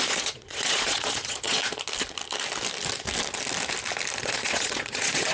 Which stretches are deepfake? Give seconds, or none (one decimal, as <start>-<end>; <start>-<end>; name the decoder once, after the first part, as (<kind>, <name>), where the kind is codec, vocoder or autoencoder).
0.0-1.6 (vocoder, Vocos); 4.2-5.3